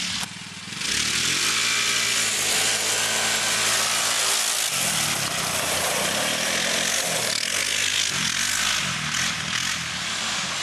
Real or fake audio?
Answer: real